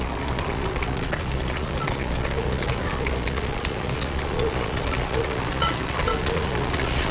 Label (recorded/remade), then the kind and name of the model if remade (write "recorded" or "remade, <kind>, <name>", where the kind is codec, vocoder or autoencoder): remade, vocoder, Vocos